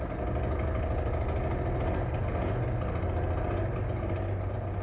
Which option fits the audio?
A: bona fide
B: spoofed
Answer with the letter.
A